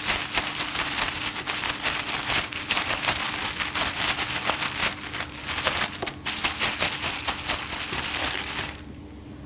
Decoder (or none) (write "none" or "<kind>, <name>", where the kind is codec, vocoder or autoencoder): none